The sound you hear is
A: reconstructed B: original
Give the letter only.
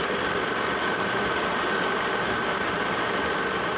B